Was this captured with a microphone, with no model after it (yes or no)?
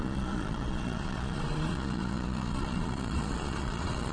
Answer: no